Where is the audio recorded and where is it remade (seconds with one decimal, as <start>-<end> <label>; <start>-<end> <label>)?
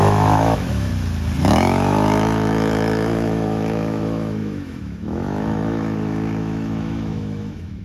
0.0-0.9 remade; 0.9-1.4 recorded; 1.4-7.8 remade